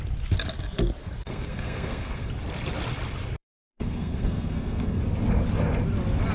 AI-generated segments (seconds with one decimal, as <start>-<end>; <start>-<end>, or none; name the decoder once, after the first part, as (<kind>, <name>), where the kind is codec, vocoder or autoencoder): 1.0-2.3 (codec, SNAC); 3.4-5.0